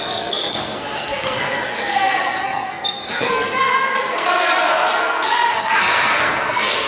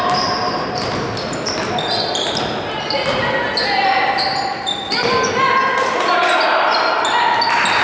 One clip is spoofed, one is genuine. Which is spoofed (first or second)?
first